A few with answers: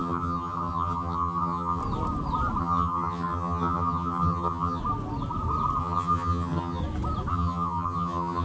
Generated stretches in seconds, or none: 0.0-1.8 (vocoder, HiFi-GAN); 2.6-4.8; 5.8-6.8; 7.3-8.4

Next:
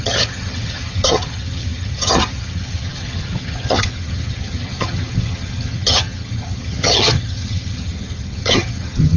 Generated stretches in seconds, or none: 0.0-9.2 (vocoder, HiFi-GAN)

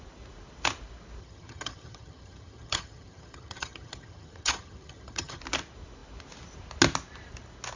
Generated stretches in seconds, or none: 1.2-5.4 (vocoder, HiFi-GAN)

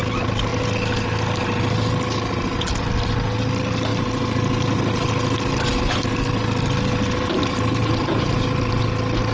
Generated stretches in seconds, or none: none

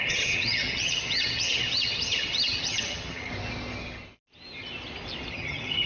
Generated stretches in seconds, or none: 0.0-3.3 (vocoder, HiFi-GAN); 5.3-5.9

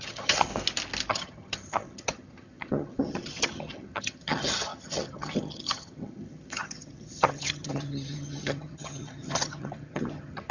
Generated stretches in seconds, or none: 0.0-0.5 (vocoder, HiFi-GAN); 1.1-10.5